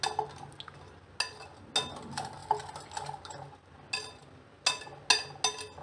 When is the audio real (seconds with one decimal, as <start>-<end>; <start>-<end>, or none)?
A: 0.0-5.8